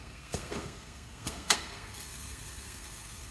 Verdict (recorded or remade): remade